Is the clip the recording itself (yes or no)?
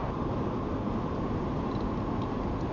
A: yes